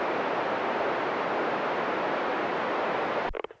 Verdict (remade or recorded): recorded